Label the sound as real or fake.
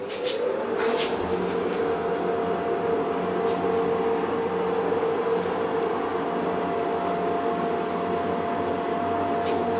real